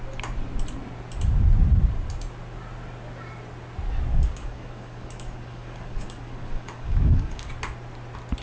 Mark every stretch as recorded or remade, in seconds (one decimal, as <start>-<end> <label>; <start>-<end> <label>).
0.0-4.1 recorded; 4.1-7.5 remade; 7.5-8.4 recorded